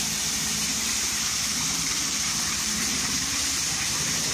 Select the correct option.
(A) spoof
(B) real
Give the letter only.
A